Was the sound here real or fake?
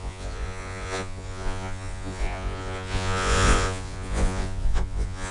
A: fake